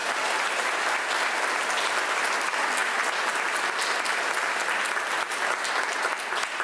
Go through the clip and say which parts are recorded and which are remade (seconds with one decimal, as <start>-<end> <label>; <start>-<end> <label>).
0.0-0.7 remade; 0.7-6.6 recorded